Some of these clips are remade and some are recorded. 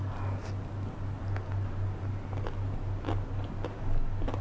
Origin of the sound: recorded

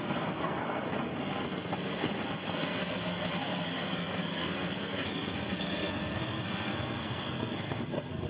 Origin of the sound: remade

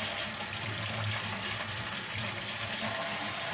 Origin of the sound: recorded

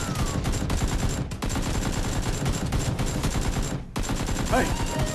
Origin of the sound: recorded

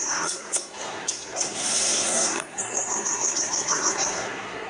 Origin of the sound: remade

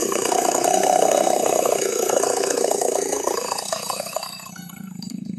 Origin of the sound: remade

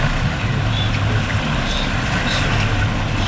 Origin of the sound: recorded